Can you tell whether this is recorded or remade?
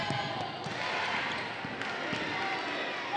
recorded